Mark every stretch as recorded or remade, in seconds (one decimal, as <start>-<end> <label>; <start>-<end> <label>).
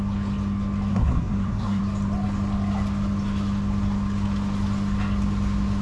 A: 0.0-0.9 recorded; 0.9-1.8 remade; 1.8-5.8 recorded